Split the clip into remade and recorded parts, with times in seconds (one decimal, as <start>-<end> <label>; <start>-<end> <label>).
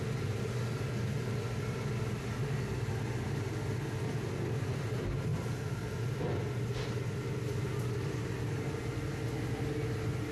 0.0-10.3 recorded